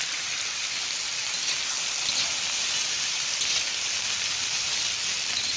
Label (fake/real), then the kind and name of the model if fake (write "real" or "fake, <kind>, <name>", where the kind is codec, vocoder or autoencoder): real